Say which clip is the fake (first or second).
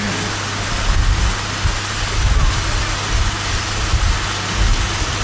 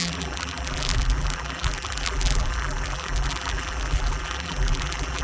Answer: second